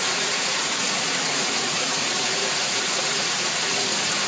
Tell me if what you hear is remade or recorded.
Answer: remade